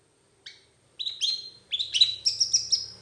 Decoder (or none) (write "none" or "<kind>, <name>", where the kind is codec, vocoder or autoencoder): none